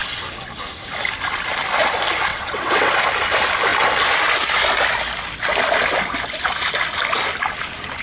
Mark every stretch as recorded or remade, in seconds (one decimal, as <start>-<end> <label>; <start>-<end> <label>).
0.0-2.3 recorded; 2.3-2.9 remade; 2.9-8.0 recorded